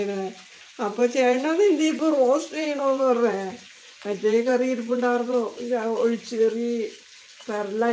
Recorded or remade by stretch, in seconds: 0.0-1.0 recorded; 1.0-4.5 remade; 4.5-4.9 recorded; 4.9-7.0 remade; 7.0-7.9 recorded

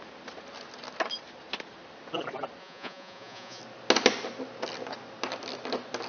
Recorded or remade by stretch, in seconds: 0.0-2.6 recorded; 2.6-3.6 remade; 3.6-6.1 recorded

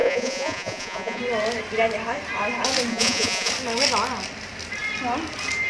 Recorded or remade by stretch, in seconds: 0.0-1.2 remade; 1.2-2.9 recorded; 2.9-3.5 remade; 3.5-5.7 recorded

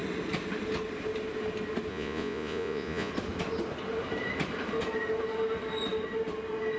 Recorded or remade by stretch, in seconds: 0.0-1.9 recorded; 1.9-3.1 remade; 3.1-6.8 recorded

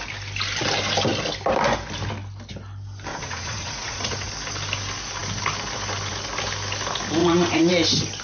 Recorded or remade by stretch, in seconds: 0.0-3.1 recorded; 3.1-4.3 remade; 4.3-7.2 recorded; 7.2-7.7 remade; 7.7-8.2 recorded

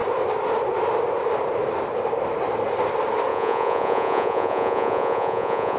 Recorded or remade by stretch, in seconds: 0.0-3.3 recorded; 3.3-5.8 remade

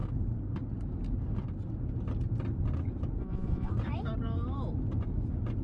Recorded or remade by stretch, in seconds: 0.0-3.2 recorded; 3.2-3.7 remade; 3.7-5.6 recorded